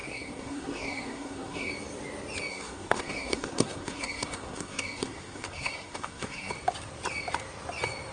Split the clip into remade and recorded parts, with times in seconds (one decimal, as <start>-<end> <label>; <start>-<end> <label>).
0.0-1.7 remade; 1.7-2.5 recorded; 2.5-6.5 remade; 6.5-8.1 recorded